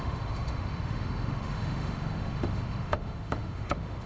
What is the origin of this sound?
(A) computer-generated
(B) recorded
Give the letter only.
A